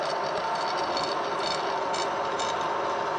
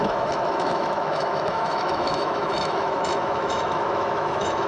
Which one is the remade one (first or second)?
second